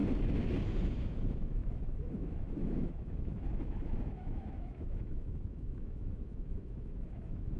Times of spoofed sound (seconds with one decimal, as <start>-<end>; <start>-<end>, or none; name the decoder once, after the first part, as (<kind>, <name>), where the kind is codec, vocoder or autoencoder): 0.8-7.6 (autoencoder, DAC-VAE)